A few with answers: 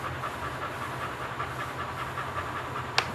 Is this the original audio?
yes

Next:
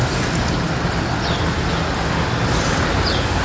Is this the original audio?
yes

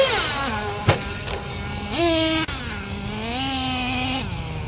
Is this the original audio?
yes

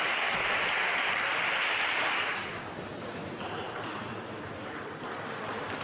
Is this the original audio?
no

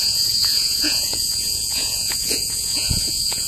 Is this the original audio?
no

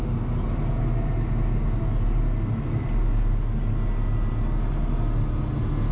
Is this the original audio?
yes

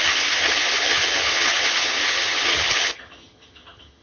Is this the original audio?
no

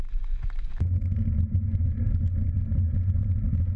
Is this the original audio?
yes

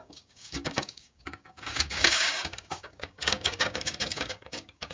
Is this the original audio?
no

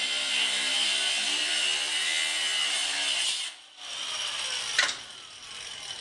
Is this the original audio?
yes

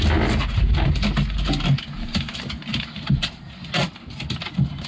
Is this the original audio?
yes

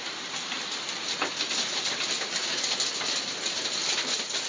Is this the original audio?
yes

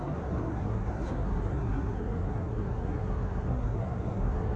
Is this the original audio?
no